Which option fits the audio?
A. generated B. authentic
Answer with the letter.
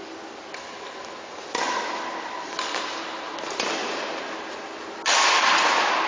B